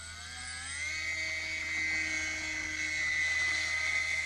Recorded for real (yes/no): yes